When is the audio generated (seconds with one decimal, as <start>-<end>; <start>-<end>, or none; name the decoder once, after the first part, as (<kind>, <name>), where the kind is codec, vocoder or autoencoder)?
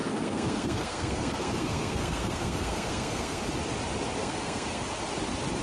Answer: 0.0-3.4 (codec, SNAC); 4.2-4.8